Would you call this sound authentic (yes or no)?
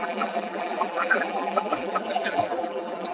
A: no